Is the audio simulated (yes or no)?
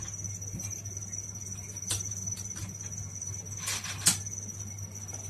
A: no